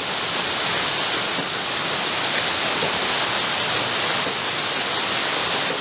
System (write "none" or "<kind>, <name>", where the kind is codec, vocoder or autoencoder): none